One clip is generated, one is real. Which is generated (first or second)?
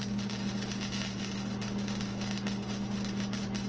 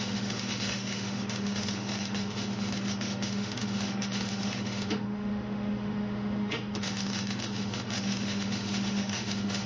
second